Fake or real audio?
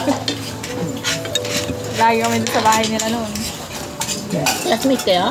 real